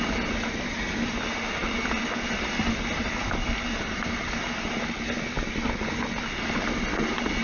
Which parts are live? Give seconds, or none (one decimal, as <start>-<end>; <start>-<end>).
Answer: 0.0-3.0; 4.8-7.4